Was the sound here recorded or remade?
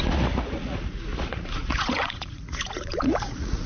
remade